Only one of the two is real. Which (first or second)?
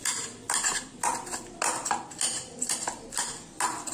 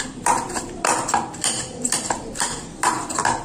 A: first